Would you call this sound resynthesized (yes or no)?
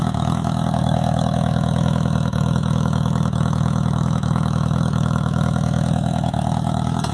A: yes